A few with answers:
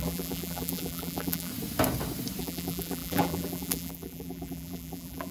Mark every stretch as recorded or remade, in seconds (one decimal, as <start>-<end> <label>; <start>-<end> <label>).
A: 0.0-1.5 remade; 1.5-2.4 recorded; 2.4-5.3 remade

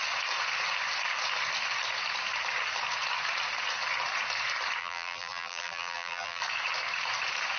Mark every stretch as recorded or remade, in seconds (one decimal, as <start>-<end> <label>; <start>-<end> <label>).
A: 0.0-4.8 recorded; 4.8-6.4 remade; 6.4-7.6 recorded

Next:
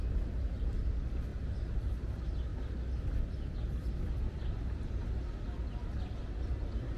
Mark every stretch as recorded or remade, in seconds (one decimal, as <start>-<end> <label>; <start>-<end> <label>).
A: 0.0-1.3 recorded; 1.3-2.1 remade; 2.1-7.0 recorded

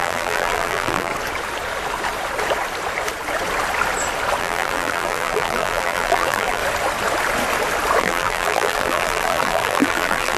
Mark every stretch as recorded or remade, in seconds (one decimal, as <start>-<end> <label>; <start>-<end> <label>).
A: 0.0-1.1 remade; 1.1-4.4 recorded; 4.4-6.6 remade; 6.6-8.0 recorded; 8.0-10.4 remade

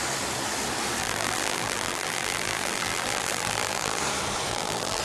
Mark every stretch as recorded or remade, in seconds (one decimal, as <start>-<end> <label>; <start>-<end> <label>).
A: 0.0-1.0 recorded; 1.0-4.0 remade; 4.0-4.5 recorded; 4.5-5.0 remade

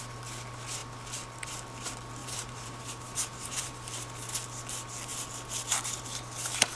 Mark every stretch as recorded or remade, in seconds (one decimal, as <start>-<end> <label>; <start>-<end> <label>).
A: 0.0-2.2 recorded; 2.2-4.0 remade; 4.0-6.7 recorded

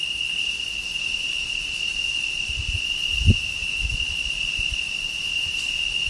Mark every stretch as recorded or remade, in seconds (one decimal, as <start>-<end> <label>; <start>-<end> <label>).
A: 0.0-3.0 recorded; 3.0-6.1 remade

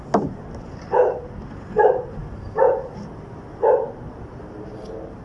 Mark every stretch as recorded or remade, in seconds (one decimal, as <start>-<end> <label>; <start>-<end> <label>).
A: 0.0-2.2 recorded; 2.2-3.4 remade; 3.4-5.2 recorded